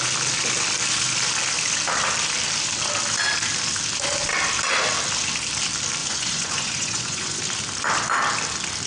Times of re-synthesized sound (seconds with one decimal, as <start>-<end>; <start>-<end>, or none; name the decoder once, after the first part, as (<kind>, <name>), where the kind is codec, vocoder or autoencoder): 6.0-7.4 (vocoder, Vocos)